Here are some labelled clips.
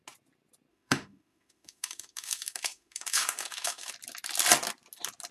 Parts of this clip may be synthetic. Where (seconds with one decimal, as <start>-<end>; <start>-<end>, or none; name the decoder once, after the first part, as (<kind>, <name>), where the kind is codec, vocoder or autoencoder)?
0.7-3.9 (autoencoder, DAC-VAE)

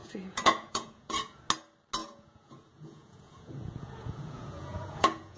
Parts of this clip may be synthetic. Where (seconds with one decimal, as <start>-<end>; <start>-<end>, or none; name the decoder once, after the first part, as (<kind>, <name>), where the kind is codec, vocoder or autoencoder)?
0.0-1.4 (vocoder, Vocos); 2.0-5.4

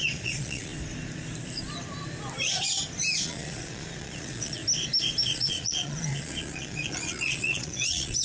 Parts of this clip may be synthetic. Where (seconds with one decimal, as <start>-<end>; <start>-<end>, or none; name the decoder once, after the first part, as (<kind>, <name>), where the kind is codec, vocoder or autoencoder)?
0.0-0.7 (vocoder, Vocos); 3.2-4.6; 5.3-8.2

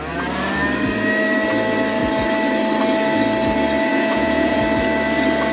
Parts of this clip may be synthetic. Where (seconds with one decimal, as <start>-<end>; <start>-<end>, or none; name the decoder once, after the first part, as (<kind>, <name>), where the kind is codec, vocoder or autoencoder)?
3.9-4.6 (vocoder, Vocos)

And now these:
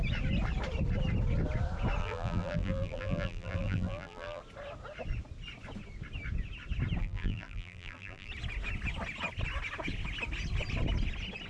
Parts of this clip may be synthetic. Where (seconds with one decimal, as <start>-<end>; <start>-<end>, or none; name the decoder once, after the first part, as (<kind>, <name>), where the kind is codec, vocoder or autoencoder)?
2.0-4.4 (vocoder, BigVGAN v2); 7.0-8.3